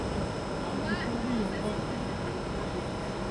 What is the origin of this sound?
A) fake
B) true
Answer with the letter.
B